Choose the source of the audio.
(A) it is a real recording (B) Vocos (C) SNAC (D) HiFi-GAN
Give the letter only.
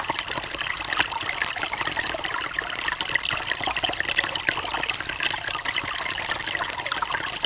A